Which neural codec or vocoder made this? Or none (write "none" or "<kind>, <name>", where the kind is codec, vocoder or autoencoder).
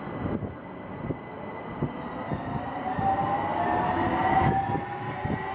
none